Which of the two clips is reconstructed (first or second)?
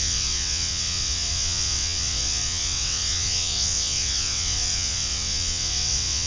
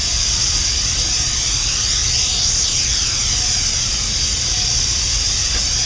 first